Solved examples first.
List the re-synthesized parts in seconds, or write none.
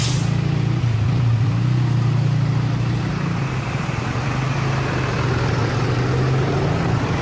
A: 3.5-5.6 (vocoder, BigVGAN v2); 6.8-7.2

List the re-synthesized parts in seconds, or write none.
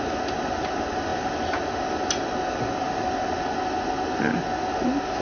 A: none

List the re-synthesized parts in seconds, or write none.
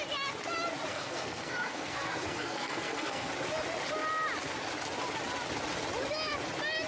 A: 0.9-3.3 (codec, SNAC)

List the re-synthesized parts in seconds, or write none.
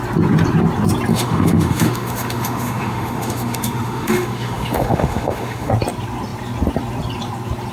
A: 1.1-5.7 (autoencoder, DAC-VAE)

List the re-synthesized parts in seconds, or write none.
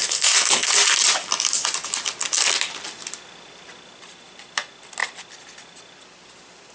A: 0.0-0.7 (codec, SNAC)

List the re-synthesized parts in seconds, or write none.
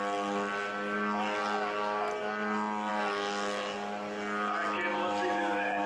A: 4.9-5.9 (codec, DAC)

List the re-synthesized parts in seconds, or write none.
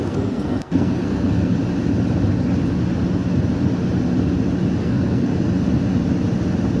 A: 0.0-1.6 (codec, SNAC); 4.8-5.3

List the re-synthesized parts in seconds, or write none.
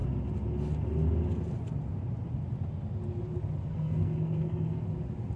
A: 3.7-4.8 (codec, SNAC)